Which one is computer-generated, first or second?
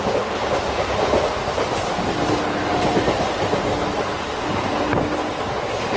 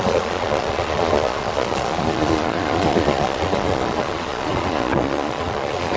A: second